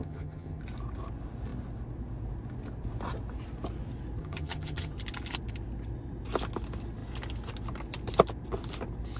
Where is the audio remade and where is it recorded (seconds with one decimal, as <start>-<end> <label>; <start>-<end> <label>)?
0.0-0.6 remade; 0.6-4.2 recorded; 4.2-4.9 remade; 4.9-9.2 recorded